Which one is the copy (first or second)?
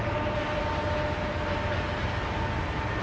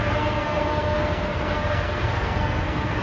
second